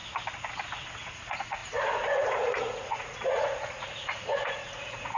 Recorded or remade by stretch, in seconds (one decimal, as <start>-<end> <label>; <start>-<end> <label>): 0.0-0.9 recorded; 0.9-5.2 remade